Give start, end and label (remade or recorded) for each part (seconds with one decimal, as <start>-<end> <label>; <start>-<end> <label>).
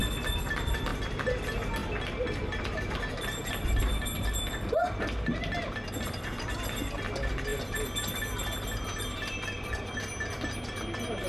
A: 0.0-9.1 recorded; 9.1-9.9 remade; 9.9-11.3 recorded